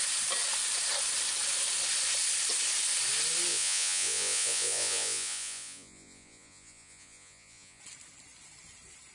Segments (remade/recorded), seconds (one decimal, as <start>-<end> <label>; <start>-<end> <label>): 0.0-3.5 recorded; 3.5-7.8 remade; 7.8-9.1 recorded